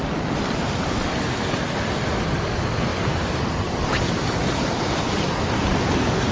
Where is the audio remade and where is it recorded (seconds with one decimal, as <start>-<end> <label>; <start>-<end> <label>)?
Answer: 0.0-6.3 recorded